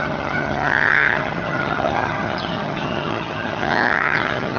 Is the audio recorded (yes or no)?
no